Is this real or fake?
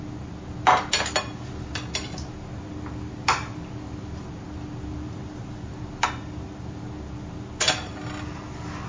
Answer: real